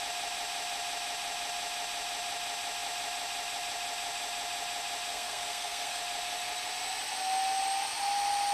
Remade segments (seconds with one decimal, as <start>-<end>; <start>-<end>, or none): 5.1-6.0